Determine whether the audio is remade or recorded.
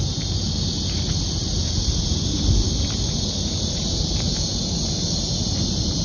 recorded